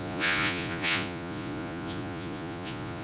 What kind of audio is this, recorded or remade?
remade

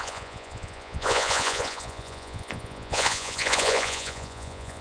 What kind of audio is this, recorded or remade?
remade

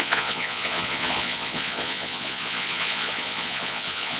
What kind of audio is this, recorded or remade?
remade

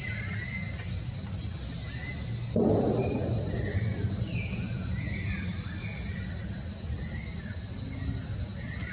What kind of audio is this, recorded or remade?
recorded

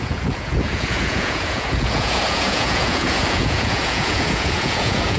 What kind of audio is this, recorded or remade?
remade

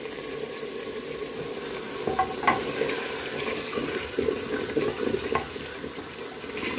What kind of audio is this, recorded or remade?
recorded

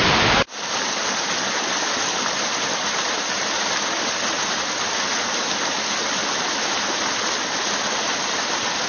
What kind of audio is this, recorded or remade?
recorded